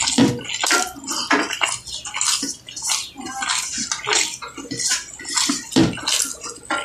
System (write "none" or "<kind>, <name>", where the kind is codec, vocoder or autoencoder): none